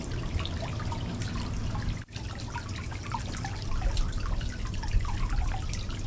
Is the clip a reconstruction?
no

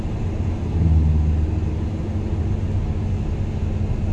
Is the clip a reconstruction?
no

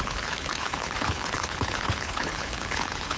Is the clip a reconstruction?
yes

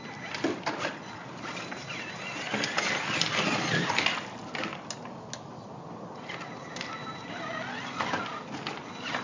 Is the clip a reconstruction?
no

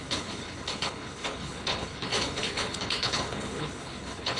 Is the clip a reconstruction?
yes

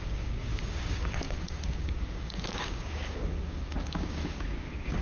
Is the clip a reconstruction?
yes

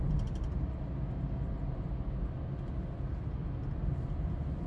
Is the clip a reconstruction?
no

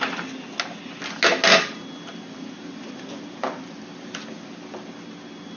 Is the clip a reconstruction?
no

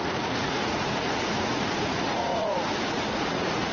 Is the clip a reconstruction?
yes